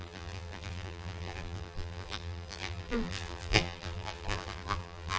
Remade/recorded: remade